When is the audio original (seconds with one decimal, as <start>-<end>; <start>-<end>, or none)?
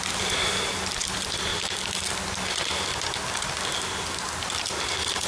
0.0-5.3